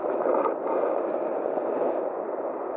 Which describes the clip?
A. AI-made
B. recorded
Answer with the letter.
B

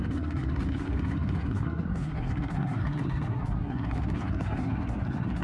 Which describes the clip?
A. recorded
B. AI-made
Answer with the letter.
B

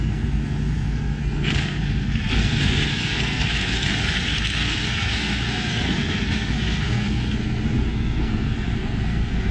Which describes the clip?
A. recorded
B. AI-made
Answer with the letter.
B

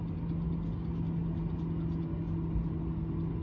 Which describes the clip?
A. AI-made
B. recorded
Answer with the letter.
B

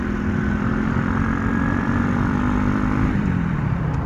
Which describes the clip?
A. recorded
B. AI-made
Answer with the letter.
B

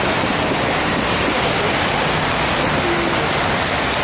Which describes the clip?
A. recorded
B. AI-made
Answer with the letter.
A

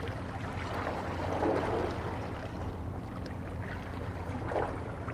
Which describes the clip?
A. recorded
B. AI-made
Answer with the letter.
A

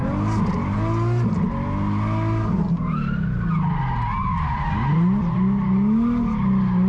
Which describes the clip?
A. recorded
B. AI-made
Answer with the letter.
A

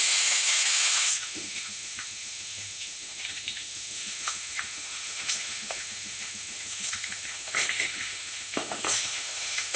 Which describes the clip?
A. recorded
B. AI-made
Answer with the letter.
B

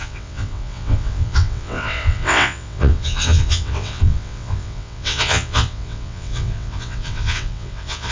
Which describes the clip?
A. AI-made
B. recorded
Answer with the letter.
A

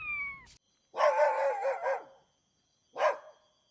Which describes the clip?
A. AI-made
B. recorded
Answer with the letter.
B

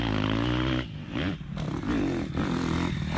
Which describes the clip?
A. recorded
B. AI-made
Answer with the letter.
A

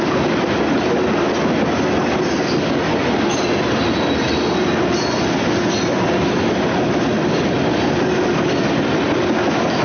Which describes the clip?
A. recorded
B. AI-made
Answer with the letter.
A